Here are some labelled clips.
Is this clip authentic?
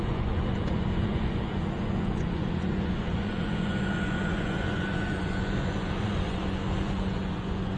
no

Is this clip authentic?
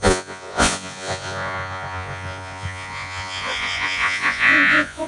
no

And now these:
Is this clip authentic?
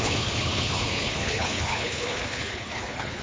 no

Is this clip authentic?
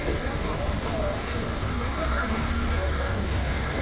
no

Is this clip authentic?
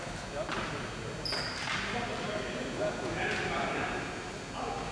yes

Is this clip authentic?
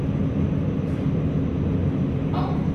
yes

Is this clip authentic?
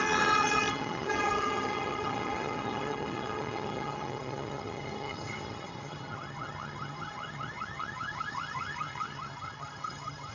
no